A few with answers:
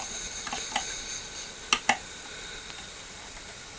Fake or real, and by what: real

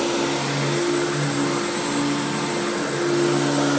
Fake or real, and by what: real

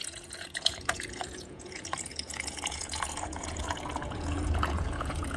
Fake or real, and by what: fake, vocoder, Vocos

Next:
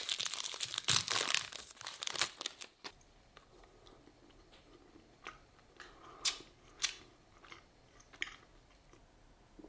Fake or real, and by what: real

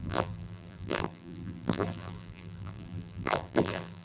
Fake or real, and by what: fake, vocoder, BigVGAN v2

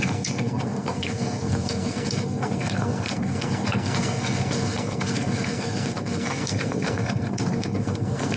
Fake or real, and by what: fake, codec, SNAC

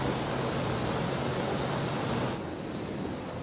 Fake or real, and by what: real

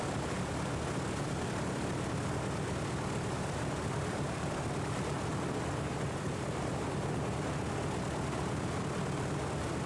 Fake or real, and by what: real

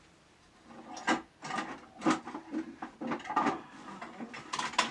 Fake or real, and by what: real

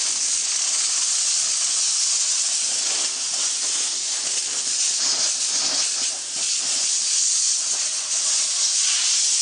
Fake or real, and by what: real